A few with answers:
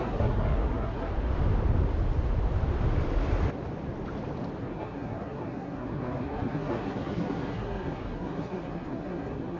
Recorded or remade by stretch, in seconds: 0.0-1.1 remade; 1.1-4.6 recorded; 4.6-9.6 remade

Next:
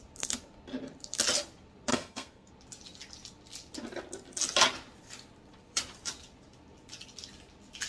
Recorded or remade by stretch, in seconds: 0.0-1.9 recorded; 1.9-2.5 remade; 2.5-7.9 recorded